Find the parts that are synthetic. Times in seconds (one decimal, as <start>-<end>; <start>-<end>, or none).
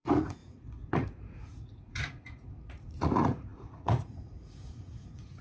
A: 0.0-5.4